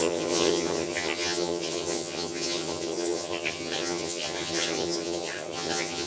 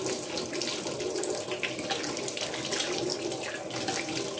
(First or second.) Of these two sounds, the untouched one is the second